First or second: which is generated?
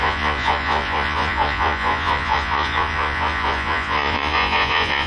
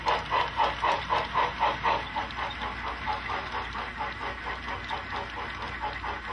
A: first